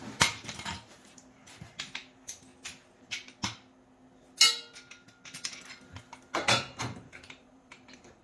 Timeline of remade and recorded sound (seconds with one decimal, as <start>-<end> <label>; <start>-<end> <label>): 0.0-2.5 remade; 2.5-6.0 recorded; 6.0-8.2 remade